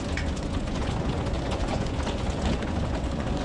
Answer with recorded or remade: remade